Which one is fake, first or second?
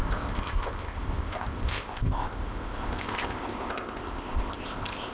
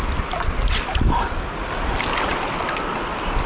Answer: first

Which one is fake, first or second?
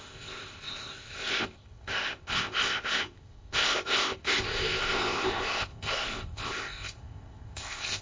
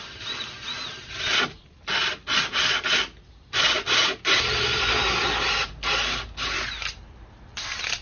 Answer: first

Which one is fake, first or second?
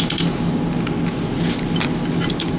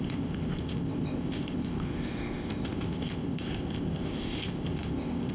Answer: second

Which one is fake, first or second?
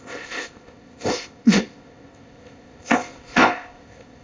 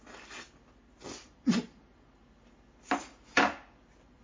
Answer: first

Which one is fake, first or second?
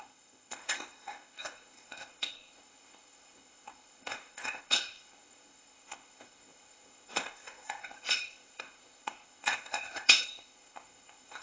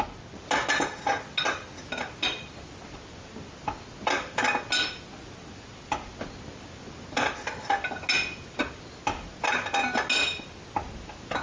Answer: first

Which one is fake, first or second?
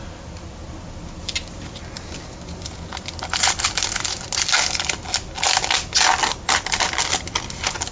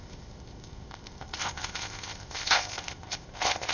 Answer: second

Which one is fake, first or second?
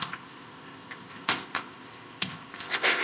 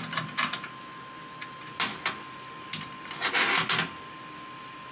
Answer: first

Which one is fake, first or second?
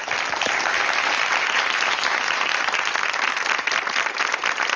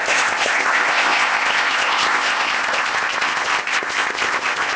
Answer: second